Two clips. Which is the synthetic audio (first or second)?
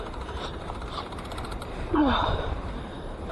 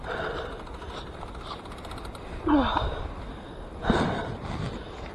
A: first